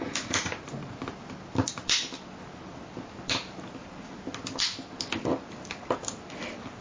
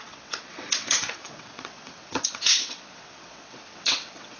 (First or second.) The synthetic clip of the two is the second